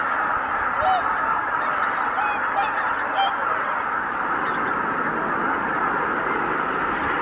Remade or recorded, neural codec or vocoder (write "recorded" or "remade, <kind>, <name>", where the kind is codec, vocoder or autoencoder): recorded